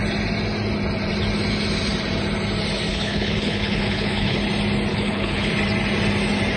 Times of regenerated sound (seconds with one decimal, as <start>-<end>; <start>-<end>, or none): 2.9-4.4; 4.9-5.5